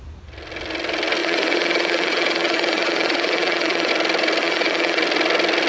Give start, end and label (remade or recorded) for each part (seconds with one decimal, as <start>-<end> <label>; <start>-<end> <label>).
0.0-1.2 recorded; 1.2-3.9 remade; 3.9-4.4 recorded; 4.4-5.0 remade; 5.0-5.7 recorded